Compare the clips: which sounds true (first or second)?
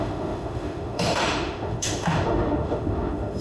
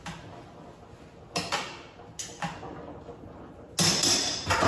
second